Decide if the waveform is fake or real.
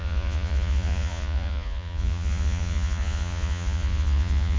fake